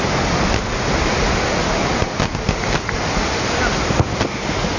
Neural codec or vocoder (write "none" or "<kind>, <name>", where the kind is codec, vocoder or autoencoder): none